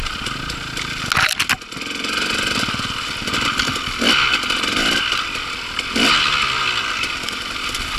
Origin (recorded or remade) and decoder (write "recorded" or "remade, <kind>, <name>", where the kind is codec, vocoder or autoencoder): recorded